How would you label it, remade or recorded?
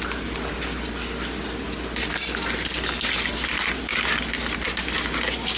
recorded